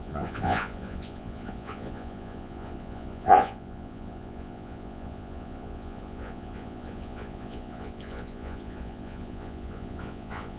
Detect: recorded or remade remade